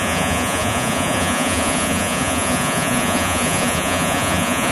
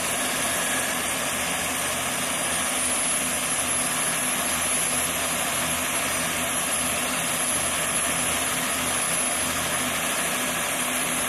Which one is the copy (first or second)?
first